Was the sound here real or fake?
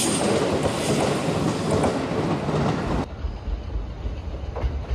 real